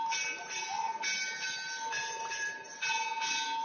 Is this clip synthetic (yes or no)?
no